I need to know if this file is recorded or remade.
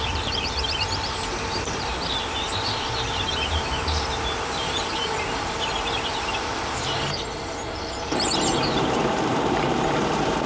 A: remade